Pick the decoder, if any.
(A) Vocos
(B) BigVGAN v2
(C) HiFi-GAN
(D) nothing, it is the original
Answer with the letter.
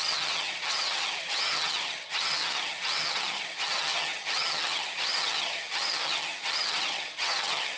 C